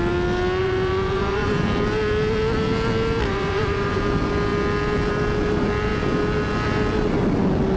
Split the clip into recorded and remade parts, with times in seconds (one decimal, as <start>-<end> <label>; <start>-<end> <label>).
0.0-0.6 recorded; 0.6-1.5 remade; 1.5-3.3 recorded; 3.3-4.0 remade; 4.0-7.8 recorded